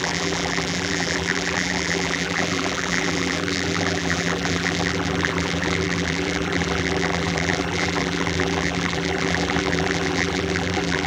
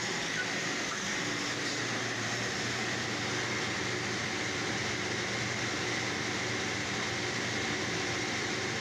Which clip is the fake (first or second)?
first